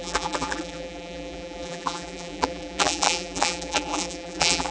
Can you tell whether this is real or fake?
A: fake